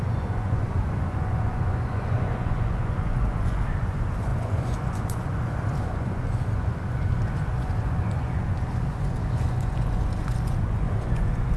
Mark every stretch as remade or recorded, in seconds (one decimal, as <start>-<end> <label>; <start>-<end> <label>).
0.0-11.6 remade